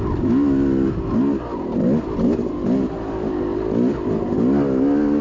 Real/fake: real